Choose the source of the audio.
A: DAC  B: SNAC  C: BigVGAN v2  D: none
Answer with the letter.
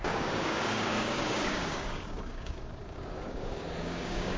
A